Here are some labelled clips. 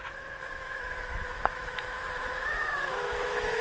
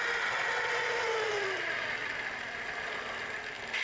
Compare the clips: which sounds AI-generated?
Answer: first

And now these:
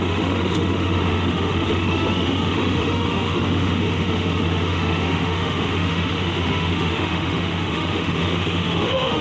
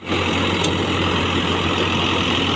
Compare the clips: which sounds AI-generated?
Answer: first